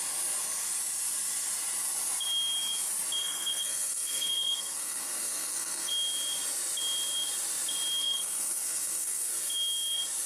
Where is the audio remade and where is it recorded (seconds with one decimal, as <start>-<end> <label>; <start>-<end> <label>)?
0.0-3.2 recorded; 3.2-5.9 remade; 5.9-8.0 recorded; 8.0-9.3 remade; 9.3-10.3 recorded